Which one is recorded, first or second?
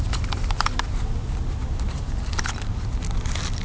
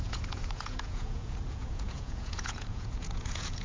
first